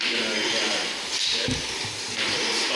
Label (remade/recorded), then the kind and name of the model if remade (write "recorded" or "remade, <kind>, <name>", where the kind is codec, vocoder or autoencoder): recorded